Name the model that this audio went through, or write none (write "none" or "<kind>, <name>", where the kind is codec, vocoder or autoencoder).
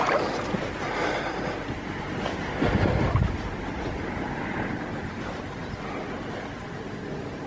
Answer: none